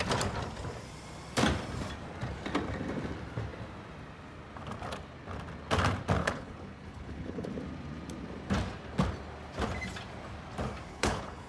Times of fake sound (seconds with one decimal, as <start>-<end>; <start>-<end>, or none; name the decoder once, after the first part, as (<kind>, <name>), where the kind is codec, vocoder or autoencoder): 6.2-7.5 (codec, HILCodec); 10.9-11.5